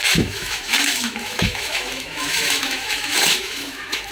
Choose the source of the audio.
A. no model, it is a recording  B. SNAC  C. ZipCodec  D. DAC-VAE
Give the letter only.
D